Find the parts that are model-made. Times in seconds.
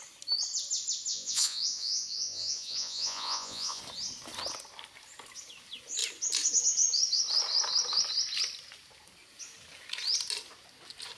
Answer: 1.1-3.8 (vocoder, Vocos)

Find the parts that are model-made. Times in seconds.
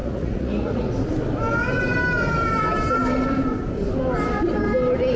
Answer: 0.0-0.9 (vocoder, Vocos)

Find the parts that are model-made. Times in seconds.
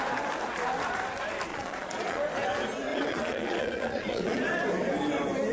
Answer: 1.5-2.2 (vocoder, Vocos); 2.9-4.4